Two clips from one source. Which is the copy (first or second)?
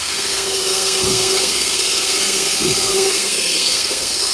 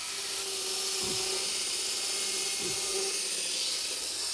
first